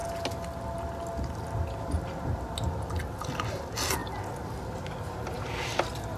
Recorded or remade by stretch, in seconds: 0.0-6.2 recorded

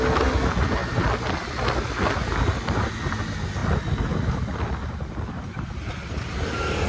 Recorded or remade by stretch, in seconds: 0.0-6.9 recorded

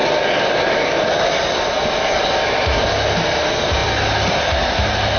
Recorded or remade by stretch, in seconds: 0.0-5.2 recorded

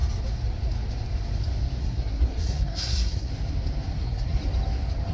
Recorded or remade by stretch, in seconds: 0.0-1.8 recorded; 1.8-3.3 remade; 3.3-3.9 recorded; 3.9-4.4 remade; 4.4-5.1 recorded

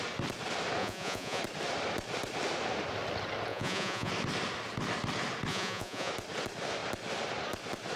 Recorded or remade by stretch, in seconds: 0.0-0.8 recorded; 0.8-1.4 remade; 1.4-3.5 recorded; 3.5-4.1 remade; 4.1-5.5 recorded; 5.5-6.1 remade; 6.1-8.0 recorded

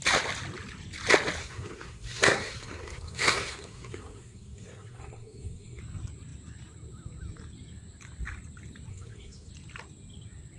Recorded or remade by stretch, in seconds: 0.0-1.4 recorded; 1.4-5.8 remade; 5.8-8.9 recorded; 8.9-9.5 remade; 9.5-10.6 recorded